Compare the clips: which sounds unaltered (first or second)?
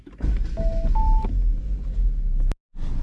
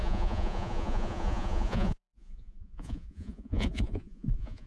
first